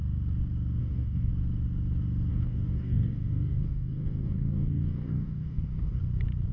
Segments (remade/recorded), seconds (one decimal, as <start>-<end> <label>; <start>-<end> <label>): 0.0-0.8 recorded; 0.8-1.3 remade; 1.3-2.3 recorded; 2.3-6.0 remade; 6.0-6.5 recorded